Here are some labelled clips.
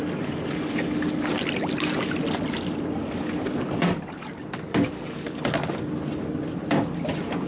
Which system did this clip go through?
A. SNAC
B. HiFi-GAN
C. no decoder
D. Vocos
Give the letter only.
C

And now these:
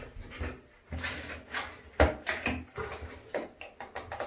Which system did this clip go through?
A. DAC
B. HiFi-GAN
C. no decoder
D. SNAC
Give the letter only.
C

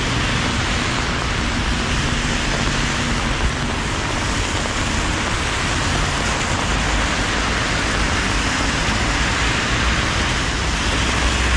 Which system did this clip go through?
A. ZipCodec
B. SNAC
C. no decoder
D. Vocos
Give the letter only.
C